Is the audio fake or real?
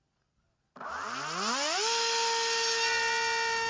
real